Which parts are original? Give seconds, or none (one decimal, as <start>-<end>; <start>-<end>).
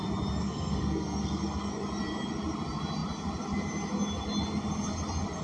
0.0-0.4; 1.7-5.4